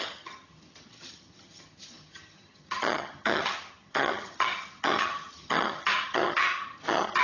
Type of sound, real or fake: fake